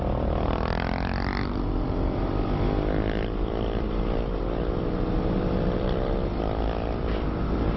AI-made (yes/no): no